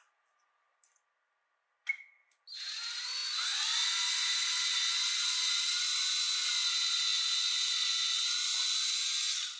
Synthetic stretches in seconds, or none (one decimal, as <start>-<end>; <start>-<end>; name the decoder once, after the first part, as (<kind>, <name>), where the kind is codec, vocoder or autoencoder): none